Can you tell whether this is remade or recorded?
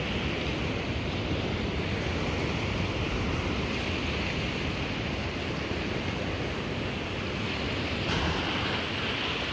recorded